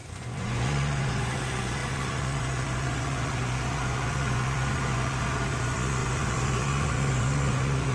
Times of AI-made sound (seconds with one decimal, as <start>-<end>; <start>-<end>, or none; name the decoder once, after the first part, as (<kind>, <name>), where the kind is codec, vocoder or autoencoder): 0.0-7.9 (vocoder, Vocos)